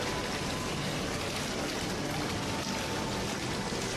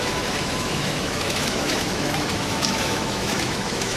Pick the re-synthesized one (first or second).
second